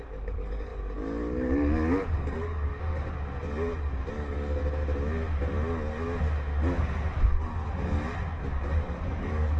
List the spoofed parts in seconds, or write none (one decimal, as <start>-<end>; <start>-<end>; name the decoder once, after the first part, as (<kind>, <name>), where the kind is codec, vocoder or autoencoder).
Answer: 0.0-2.7 (codec, DAC); 4.1-4.6; 8.4-9.6